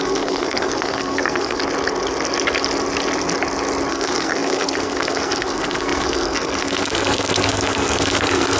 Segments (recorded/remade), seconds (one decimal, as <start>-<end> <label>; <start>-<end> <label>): 0.0-1.6 remade; 1.6-3.9 recorded; 3.9-8.6 remade